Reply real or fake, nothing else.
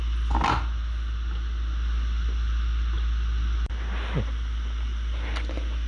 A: real